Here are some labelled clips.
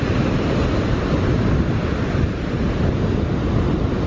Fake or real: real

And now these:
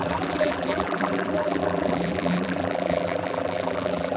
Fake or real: fake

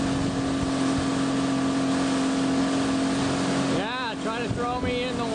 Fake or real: real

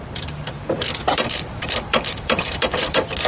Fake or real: fake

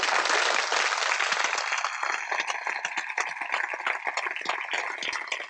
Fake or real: real